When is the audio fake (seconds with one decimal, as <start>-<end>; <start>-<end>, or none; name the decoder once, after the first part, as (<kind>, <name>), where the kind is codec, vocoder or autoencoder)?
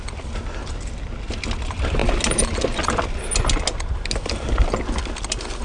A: none